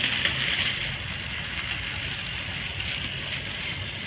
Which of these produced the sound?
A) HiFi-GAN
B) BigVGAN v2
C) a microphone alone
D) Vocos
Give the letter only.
C